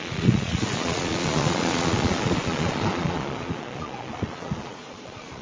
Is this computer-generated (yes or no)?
yes